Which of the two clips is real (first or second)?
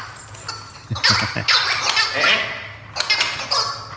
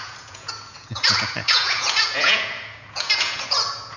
first